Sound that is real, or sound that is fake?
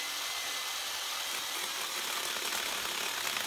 real